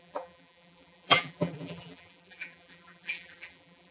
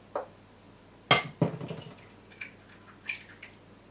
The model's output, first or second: first